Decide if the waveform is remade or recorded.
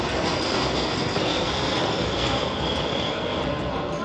remade